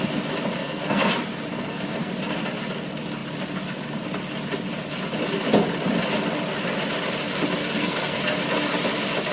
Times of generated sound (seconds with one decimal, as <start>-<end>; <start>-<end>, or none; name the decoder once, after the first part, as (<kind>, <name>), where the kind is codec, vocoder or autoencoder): 0.6-1.1 (codec, SNAC); 1.5-2.1; 7.6-8.2